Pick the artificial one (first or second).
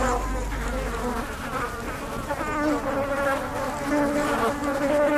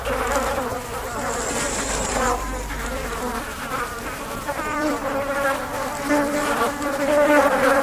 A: second